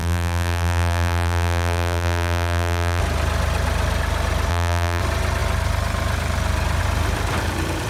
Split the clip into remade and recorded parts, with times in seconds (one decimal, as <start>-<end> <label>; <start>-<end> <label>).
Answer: 0.0-3.0 remade; 3.0-4.5 recorded; 4.5-5.0 remade; 5.0-7.9 recorded

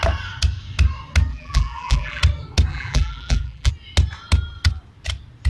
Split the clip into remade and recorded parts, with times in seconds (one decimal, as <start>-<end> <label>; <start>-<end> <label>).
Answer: 0.0-1.3 recorded; 1.3-2.2 remade; 2.2-2.7 recorded; 2.7-3.7 remade; 3.7-5.5 recorded